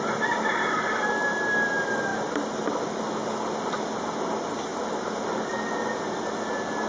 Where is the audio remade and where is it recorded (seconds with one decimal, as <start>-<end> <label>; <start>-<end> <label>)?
0.0-6.9 recorded